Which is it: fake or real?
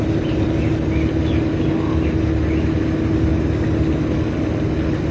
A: real